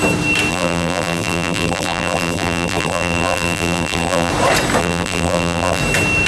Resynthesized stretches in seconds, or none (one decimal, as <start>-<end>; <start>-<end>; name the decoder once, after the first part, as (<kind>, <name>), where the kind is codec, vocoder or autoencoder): 0.5-4.3 (vocoder, BigVGAN v2); 4.8-5.8